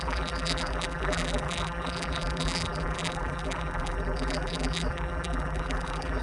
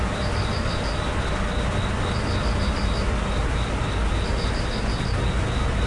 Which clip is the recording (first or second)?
second